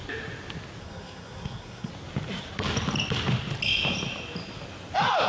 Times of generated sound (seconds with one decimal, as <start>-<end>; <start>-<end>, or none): 0.8-1.9